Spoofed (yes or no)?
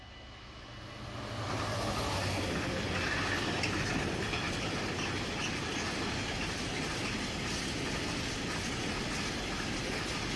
no